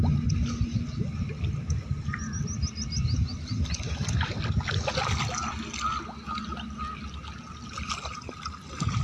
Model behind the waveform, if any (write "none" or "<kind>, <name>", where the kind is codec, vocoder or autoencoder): none